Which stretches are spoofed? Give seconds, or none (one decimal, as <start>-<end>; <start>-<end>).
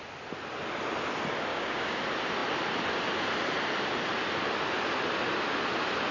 1.5-2.0